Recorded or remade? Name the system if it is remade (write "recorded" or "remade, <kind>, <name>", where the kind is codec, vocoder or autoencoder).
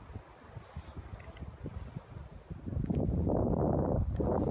recorded